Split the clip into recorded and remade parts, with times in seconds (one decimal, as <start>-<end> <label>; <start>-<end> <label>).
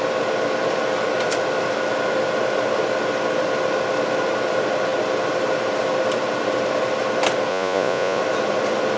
0.0-7.5 recorded; 7.5-8.2 remade; 8.2-9.0 recorded